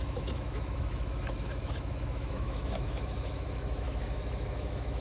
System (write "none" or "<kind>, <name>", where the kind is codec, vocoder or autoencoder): autoencoder, DAC-VAE